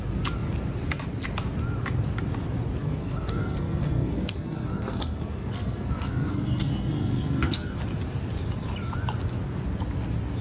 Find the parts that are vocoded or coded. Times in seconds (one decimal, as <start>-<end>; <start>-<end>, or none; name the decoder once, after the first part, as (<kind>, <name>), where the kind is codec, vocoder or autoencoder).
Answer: 2.8-7.8 (codec, SNAC)